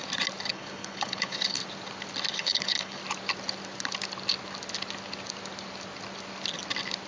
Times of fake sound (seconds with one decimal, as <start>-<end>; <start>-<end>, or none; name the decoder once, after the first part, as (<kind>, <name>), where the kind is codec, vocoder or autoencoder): 0.5-1.6 (codec, HILCodec); 2.3-3.0